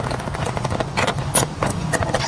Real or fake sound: fake